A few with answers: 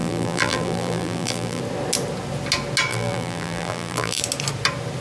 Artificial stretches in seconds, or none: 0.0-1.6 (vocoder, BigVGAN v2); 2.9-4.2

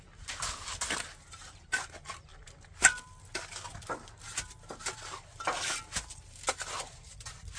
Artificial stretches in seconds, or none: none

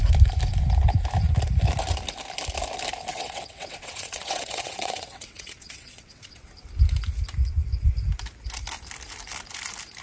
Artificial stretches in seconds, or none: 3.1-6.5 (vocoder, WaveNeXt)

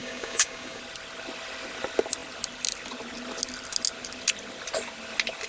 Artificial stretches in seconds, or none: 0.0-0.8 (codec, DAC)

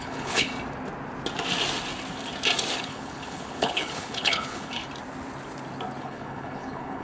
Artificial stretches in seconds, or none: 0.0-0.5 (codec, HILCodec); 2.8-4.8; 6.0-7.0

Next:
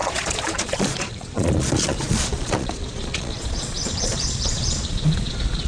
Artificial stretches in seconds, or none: 0.0-5.7 (vocoder, Vocos)

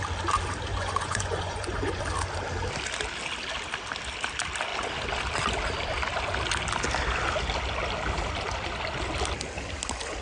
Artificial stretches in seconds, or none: 0.7-2.0 (vocoder, Vocos)